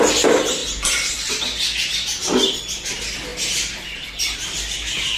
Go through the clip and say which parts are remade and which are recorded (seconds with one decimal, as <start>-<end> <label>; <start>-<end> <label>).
0.0-5.2 recorded